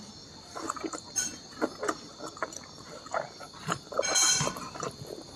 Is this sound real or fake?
real